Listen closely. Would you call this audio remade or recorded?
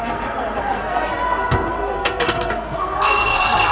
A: remade